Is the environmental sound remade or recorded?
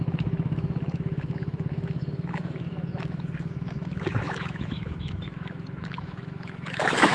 remade